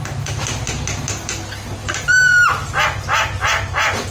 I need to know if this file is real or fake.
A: real